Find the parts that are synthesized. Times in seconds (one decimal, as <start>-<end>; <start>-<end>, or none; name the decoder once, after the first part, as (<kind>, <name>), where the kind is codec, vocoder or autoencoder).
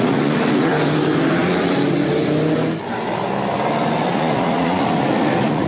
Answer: 0.0-0.7 (vocoder, Vocos); 4.1-5.7